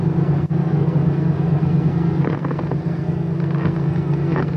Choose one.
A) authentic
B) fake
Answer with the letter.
B